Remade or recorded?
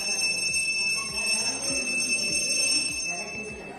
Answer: recorded